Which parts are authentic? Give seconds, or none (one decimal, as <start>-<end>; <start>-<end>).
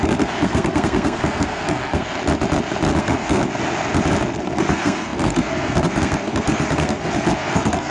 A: 2.1-3.0; 3.4-4.4